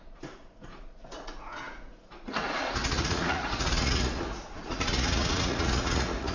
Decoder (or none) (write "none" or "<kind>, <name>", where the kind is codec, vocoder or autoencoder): vocoder, Vocos